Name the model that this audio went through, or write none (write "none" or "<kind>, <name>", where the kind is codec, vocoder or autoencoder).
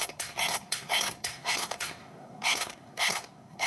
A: codec, SNAC